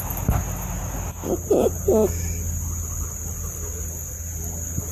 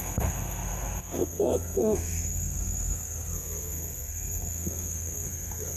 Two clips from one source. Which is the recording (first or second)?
first